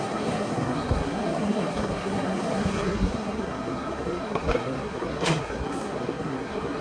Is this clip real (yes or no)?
no